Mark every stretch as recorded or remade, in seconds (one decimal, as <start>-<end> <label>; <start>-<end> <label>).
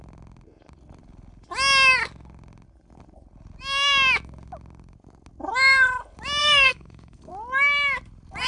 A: 0.0-6.4 recorded; 6.4-7.3 remade; 7.3-8.5 recorded